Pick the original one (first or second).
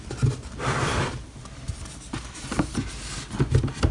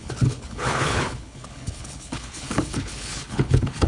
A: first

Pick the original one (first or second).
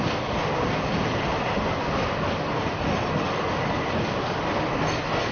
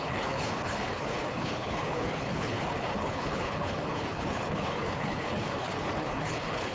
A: first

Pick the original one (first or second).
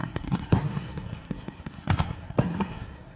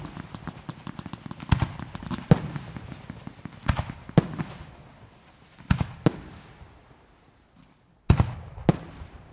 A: second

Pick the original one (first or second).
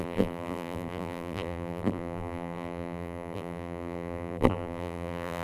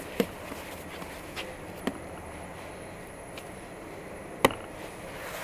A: second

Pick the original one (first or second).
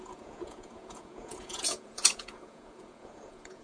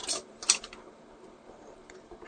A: second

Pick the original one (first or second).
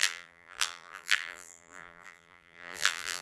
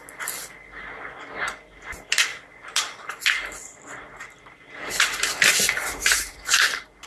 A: second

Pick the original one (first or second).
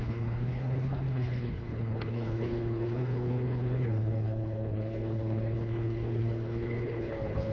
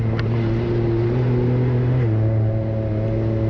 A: second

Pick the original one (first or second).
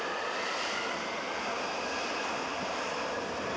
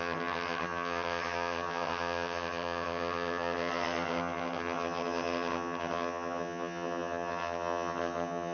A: first